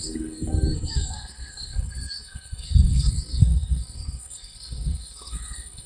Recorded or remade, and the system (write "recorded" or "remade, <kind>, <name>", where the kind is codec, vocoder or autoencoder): remade, codec, SNAC